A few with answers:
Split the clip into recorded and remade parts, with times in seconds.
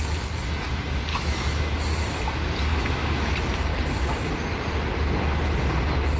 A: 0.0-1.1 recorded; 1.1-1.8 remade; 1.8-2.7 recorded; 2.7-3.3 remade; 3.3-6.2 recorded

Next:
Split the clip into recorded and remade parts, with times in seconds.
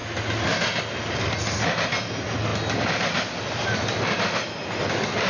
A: 0.0-5.3 recorded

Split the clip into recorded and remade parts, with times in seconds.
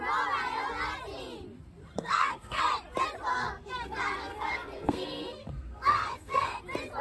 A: 0.0-1.8 recorded; 1.8-2.6 remade; 2.6-3.3 recorded; 3.3-6.6 remade; 6.6-7.0 recorded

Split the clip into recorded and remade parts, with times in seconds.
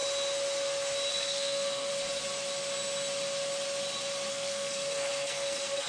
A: 0.0-1.1 recorded; 1.1-1.9 remade; 1.9-4.3 recorded; 4.3-5.9 remade